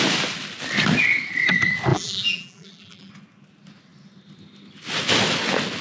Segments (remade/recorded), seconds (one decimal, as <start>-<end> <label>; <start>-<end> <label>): 0.0-1.9 recorded; 1.9-3.1 remade; 3.1-5.8 recorded